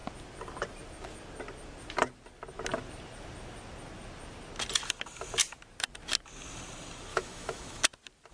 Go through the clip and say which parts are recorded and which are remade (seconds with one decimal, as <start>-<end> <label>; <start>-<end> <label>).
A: 0.0-7.1 recorded; 7.1-7.8 remade; 7.8-8.3 recorded